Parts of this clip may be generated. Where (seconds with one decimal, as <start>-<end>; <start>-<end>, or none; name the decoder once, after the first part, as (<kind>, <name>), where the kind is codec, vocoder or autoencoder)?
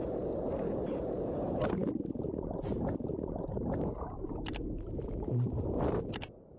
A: none